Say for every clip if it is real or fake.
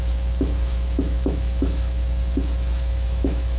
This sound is fake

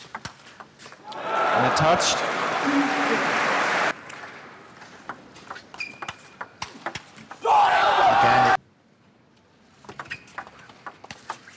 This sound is real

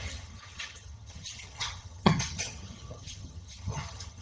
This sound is fake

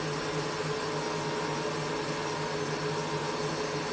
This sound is real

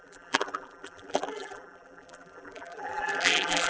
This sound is fake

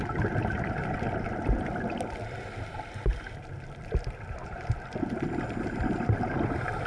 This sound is real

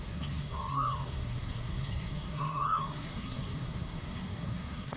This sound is fake